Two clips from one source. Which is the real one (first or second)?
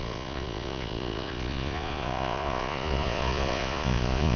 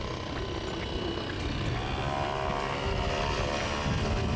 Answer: second